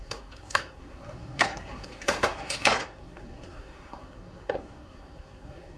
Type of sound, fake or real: fake